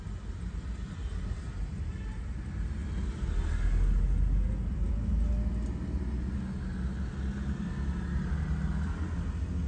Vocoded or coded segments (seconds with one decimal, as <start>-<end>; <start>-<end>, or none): none